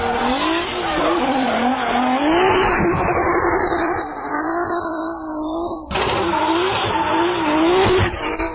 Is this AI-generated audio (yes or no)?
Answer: no